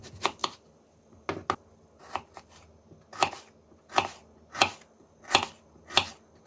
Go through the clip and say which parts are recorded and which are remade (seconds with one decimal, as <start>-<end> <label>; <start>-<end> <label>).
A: 0.0-6.5 recorded